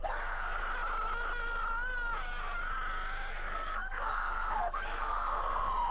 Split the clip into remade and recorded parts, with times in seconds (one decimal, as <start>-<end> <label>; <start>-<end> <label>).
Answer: 0.0-0.6 remade; 0.6-3.3 recorded; 3.3-5.9 remade